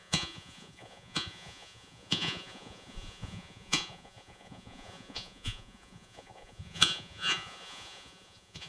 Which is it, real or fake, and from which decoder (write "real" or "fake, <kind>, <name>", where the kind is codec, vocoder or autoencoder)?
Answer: fake, vocoder, Vocos